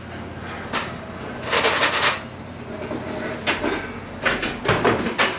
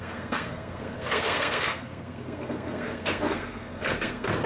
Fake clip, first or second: second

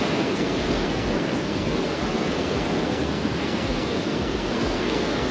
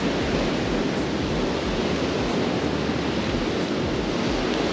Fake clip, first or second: first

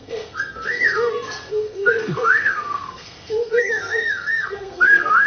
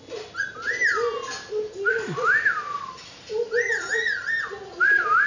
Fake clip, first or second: first